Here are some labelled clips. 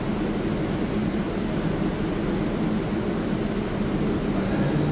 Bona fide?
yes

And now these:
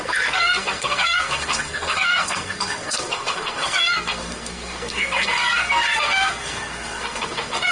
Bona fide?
no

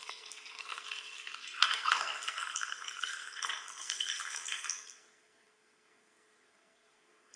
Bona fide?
no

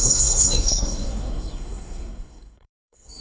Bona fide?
no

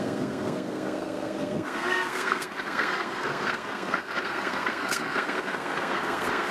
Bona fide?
no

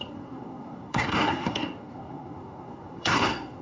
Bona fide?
no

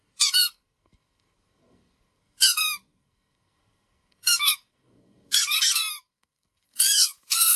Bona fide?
no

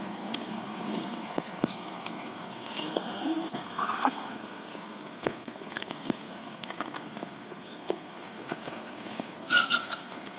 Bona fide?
no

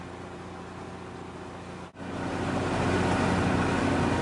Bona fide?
yes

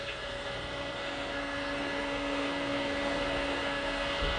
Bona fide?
no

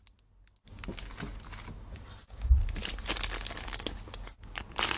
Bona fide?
yes